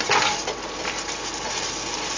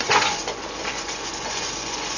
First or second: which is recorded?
first